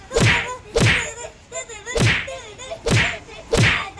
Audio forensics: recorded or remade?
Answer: recorded